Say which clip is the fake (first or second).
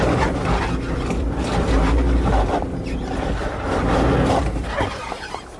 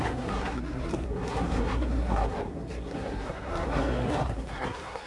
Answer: second